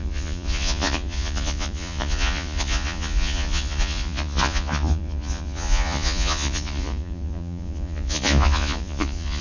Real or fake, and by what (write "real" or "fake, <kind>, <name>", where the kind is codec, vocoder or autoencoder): fake, vocoder, Vocos